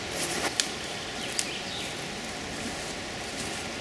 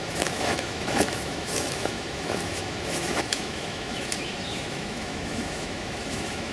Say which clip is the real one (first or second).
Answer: first